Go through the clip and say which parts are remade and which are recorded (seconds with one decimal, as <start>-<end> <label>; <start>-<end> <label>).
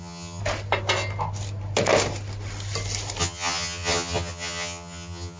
0.0-0.4 remade; 0.4-3.2 recorded; 3.2-5.4 remade